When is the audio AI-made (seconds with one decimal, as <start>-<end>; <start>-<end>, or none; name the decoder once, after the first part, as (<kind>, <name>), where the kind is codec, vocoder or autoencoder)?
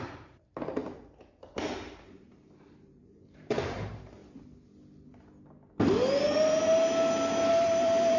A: 0.0-4.2 (vocoder, BigVGAN v2); 7.5-8.2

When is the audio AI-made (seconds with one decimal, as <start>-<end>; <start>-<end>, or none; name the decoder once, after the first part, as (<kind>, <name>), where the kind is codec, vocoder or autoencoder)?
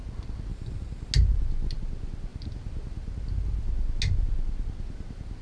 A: 0.5-1.1 (vocoder, BigVGAN v2)